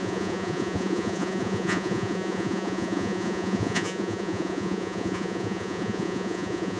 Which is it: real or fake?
fake